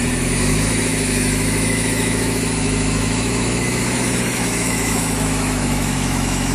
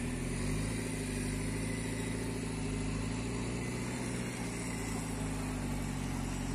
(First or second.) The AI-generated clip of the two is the first